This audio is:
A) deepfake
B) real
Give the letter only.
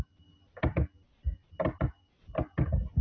B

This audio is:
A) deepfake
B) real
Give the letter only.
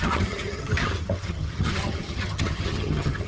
A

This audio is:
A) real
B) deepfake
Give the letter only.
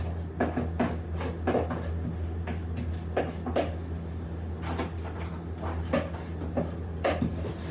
A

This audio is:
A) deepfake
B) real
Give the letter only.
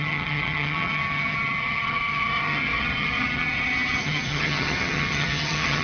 A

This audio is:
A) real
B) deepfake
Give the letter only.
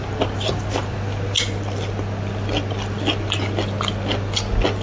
A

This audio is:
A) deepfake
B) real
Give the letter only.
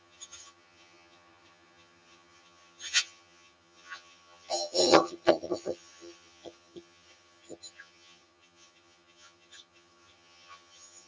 A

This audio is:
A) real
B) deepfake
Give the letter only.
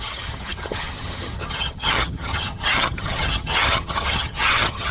B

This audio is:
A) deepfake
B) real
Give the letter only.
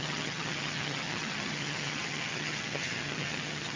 A